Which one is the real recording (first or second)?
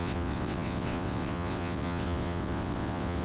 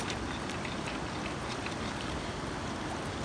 second